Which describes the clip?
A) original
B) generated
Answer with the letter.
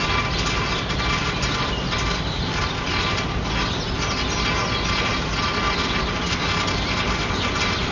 A